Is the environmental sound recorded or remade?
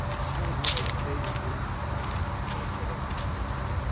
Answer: recorded